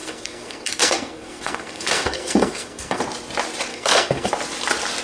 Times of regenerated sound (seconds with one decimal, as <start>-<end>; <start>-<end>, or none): 0.0-3.0; 3.7-4.3